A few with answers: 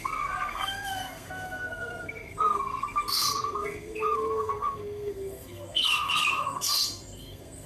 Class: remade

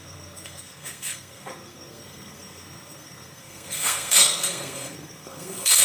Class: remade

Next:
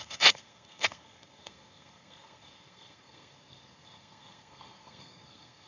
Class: remade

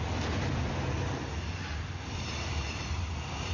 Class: recorded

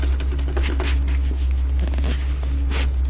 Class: recorded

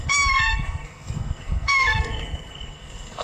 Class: remade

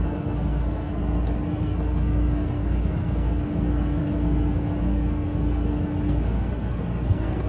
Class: remade